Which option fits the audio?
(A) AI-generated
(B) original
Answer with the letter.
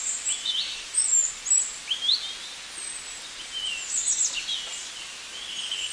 B